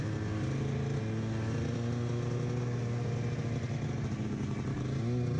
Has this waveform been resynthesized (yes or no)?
no